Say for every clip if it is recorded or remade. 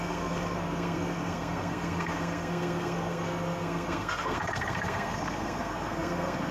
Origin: remade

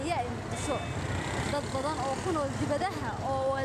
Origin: recorded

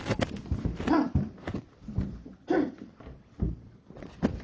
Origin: recorded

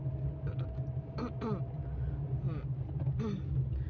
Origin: recorded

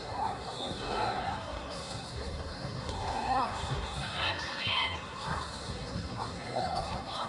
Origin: remade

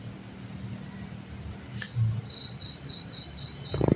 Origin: recorded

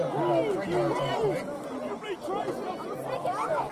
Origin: recorded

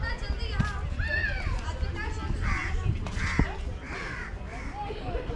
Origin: recorded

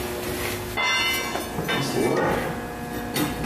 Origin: recorded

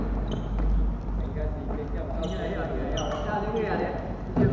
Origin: recorded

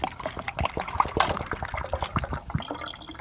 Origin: recorded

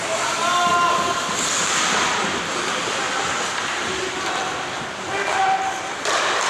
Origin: recorded